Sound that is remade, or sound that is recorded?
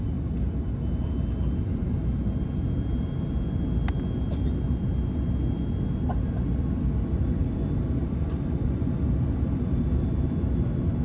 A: recorded